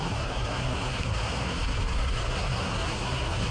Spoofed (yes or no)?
yes